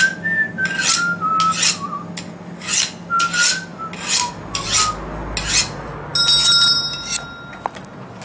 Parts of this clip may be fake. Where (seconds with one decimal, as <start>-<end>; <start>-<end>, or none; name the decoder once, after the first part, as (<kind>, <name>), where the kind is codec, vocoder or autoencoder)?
none